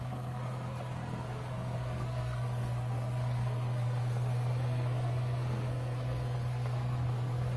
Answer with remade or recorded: remade